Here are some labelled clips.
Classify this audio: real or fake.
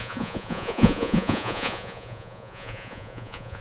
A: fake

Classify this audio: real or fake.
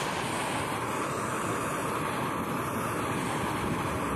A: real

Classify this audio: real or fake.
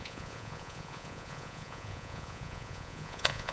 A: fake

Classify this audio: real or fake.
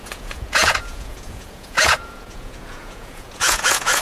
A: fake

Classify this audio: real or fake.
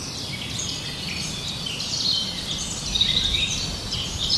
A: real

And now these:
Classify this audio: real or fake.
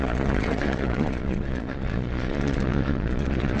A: fake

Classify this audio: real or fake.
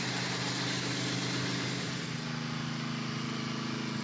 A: real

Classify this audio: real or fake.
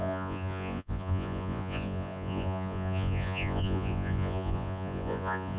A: fake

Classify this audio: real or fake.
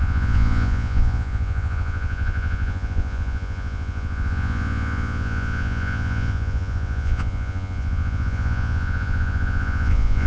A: fake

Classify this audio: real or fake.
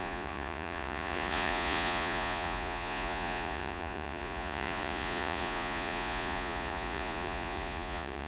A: fake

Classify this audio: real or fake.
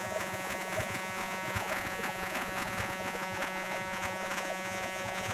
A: fake